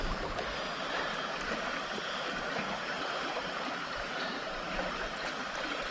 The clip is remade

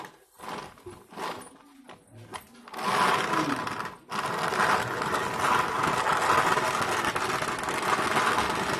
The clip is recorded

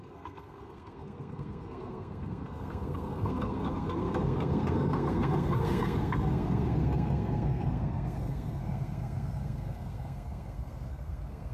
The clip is remade